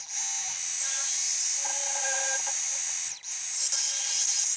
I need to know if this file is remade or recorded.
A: recorded